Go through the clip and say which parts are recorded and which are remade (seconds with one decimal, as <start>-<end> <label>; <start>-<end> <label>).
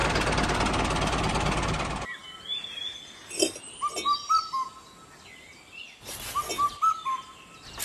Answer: 0.0-7.8 recorded